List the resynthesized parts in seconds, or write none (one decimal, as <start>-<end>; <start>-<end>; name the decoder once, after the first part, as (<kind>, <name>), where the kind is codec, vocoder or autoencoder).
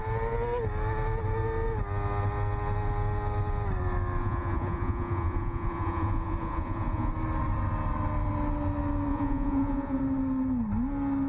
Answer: 4.2-7.1 (vocoder, Vocos); 9.1-10.0